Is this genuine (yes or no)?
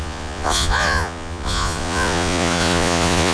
no